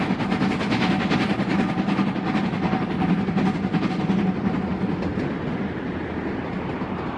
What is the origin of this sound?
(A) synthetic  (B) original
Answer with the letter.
B